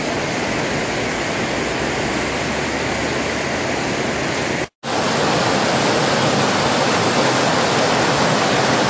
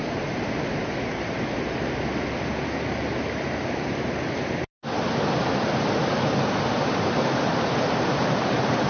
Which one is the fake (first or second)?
second